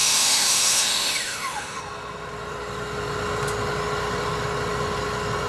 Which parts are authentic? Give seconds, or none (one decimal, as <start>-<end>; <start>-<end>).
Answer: 1.8-5.5